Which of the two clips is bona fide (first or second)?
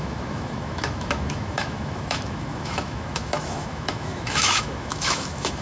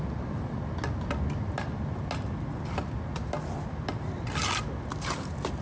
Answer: second